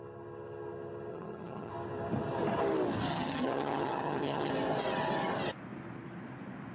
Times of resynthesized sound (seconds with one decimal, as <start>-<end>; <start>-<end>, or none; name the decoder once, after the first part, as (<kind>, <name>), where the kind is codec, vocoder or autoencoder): 1.1-1.7 (vocoder, HiFi-GAN); 3.1-4.5